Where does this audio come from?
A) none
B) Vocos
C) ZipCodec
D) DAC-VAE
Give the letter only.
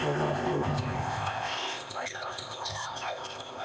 C